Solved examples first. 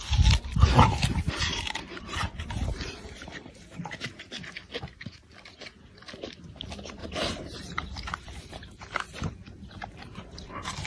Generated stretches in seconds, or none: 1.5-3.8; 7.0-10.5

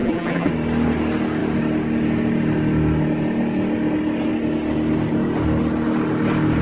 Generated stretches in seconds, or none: 0.0-0.5